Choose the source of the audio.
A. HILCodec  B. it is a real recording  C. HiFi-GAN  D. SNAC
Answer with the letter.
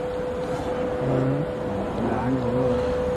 B